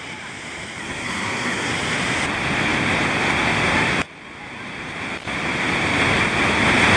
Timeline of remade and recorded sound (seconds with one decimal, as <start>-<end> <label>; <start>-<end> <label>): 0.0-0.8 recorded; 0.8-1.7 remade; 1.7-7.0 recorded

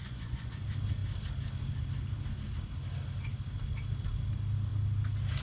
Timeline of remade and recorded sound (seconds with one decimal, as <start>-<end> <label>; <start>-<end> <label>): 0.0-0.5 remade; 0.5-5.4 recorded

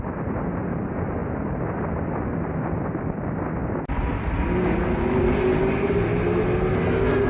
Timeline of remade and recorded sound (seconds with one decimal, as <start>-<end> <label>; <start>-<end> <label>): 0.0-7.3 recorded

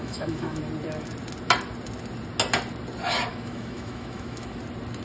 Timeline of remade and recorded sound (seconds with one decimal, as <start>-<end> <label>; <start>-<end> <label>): 0.0-0.6 remade; 0.6-3.3 recorded; 3.3-4.6 remade; 4.6-5.0 recorded

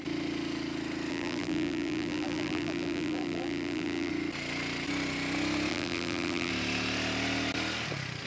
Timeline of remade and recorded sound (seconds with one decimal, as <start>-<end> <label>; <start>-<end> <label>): 0.0-1.1 recorded; 1.1-4.1 remade; 4.1-5.7 recorded; 5.7-6.5 remade; 6.5-8.3 recorded

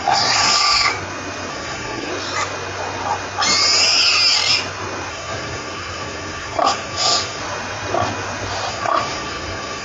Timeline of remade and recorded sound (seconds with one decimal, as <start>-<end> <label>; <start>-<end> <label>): 0.0-0.9 remade; 0.9-1.5 recorded; 1.5-2.1 remade; 2.1-5.1 recorded; 5.1-7.4 remade; 7.4-8.7 recorded; 8.7-9.8 remade

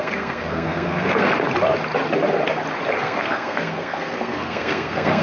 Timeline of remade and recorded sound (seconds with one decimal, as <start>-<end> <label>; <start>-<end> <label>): 0.0-1.3 remade; 1.3-3.0 recorded; 3.0-5.2 remade

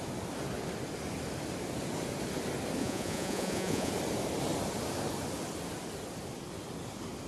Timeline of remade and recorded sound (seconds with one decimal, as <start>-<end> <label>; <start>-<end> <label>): 0.0-2.8 recorded; 2.8-3.9 remade; 3.9-7.3 recorded